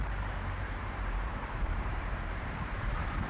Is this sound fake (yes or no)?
yes